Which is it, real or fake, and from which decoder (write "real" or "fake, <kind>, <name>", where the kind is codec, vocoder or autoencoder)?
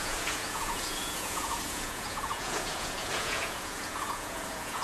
fake, vocoder, Vocos